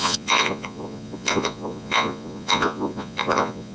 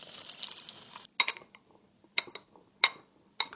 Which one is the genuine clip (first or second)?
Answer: second